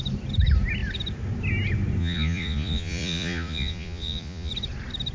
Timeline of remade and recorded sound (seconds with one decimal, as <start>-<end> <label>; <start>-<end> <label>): 0.0-2.0 recorded; 2.0-4.5 remade; 4.5-5.1 recorded